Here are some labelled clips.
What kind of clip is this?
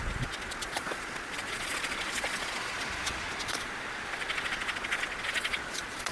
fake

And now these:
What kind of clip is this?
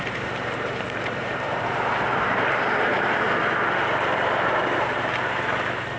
fake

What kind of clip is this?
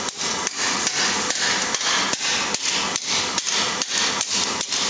real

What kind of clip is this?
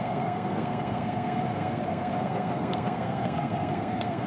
fake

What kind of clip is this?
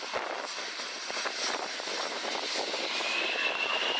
real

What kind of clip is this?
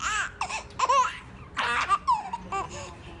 real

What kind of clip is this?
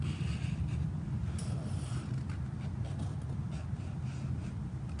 real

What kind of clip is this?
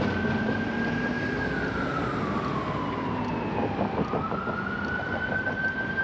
real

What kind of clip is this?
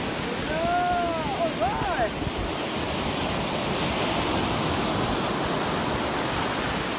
real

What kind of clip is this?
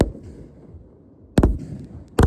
real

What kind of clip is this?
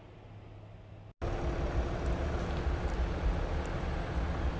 real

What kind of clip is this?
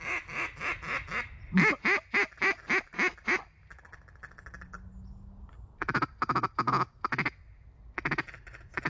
real